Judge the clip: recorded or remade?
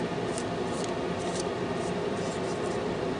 recorded